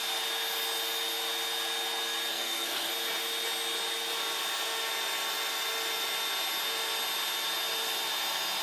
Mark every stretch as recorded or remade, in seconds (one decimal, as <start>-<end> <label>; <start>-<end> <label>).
0.0-2.3 recorded; 2.3-2.9 remade; 2.9-8.6 recorded